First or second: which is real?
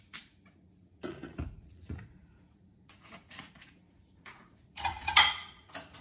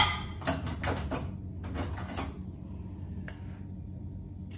second